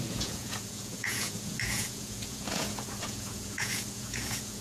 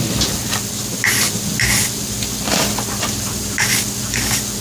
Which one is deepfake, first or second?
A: first